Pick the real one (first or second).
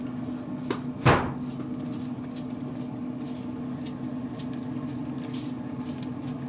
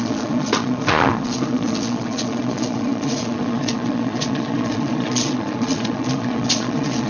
first